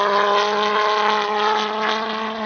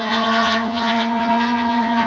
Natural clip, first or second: first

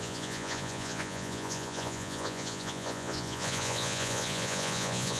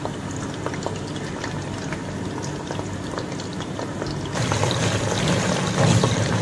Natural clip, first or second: second